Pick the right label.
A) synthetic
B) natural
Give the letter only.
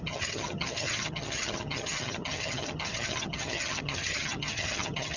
A